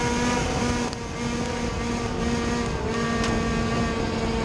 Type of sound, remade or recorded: recorded